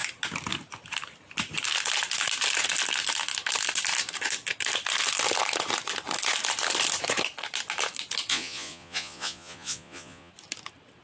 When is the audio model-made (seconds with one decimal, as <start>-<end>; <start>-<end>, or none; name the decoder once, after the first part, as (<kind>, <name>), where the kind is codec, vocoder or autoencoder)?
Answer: 8.3-10.3 (vocoder, Vocos)